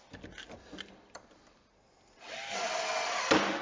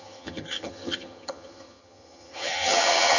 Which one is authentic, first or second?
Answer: first